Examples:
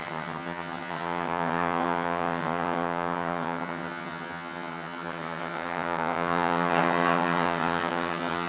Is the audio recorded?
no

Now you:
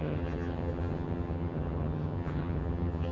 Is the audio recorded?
no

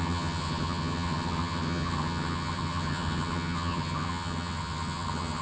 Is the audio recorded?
no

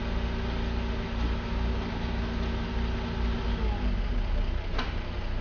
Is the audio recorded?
yes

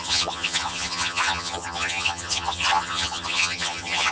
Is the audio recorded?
no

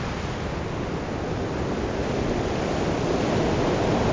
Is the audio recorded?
yes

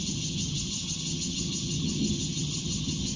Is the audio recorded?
no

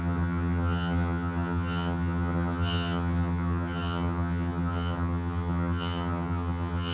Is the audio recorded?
no